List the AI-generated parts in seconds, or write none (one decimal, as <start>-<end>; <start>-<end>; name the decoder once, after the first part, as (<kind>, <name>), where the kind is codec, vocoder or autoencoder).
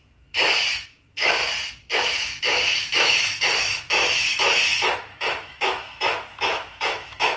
0.0-1.4 (autoencoder, DAC-VAE); 2.0-7.4